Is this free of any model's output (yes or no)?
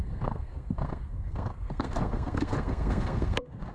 no